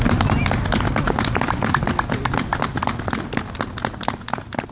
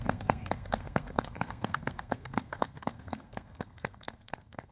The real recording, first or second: first